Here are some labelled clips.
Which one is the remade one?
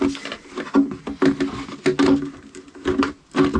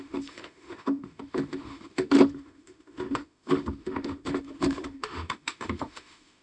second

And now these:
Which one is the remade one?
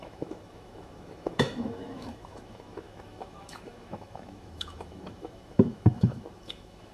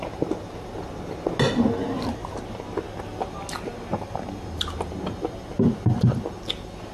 first